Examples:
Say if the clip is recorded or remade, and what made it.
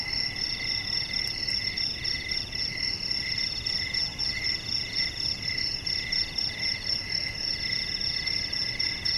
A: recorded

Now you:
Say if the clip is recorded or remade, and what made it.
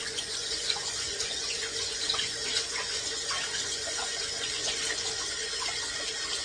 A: remade, vocoder, Vocos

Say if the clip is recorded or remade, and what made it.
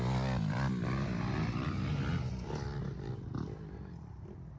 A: recorded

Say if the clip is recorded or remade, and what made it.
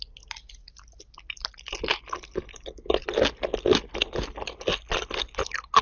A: recorded